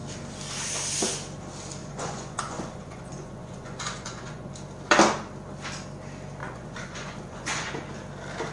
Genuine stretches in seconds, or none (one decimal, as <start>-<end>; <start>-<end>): 0.0-1.8; 4.5-6.4; 7.7-8.5